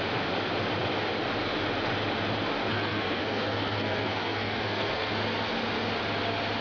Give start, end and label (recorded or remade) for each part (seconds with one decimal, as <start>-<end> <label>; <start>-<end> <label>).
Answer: 0.0-2.7 recorded; 2.7-5.1 remade; 5.1-6.6 recorded